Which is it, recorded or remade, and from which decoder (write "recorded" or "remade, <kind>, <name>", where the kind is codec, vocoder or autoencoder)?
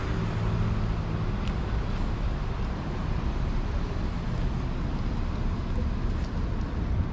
recorded